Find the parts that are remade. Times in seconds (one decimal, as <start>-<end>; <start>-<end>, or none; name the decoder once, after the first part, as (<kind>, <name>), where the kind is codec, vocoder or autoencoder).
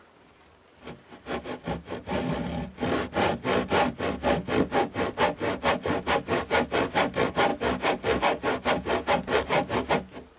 none